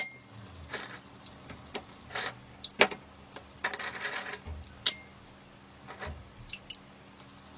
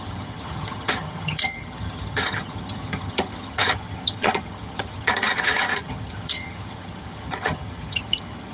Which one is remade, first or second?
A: second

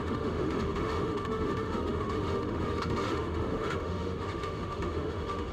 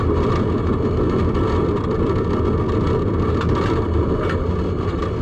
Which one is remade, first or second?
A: first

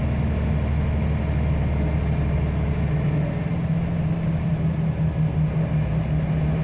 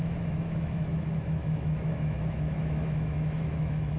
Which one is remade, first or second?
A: second